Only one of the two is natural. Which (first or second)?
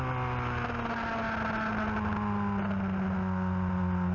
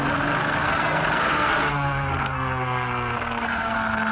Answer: first